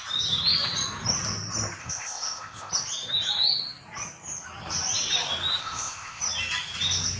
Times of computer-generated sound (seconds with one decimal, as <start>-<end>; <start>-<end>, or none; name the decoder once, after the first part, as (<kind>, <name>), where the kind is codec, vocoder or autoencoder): 1.8-2.7 (codec, ZipCodec); 5.6-6.2